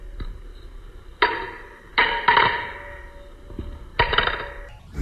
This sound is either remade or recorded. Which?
recorded